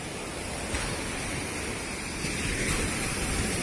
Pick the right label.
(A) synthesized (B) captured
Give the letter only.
B